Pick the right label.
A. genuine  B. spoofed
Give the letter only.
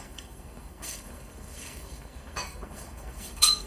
B